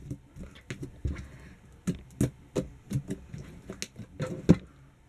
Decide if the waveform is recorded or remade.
recorded